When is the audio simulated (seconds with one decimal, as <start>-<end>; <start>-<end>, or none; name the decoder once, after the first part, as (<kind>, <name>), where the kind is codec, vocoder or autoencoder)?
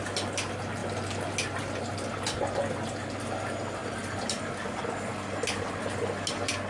none